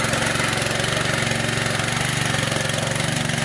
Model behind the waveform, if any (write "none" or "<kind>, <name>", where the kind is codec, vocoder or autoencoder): none